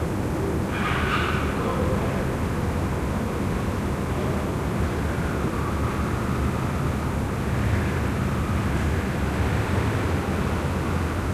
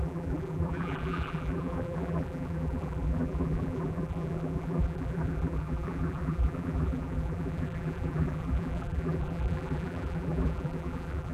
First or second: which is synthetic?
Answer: second